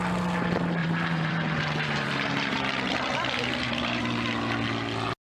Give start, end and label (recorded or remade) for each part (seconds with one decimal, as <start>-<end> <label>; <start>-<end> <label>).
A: 0.0-0.8 recorded; 0.8-4.0 remade; 4.0-5.3 recorded